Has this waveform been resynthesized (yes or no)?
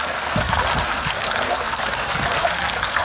yes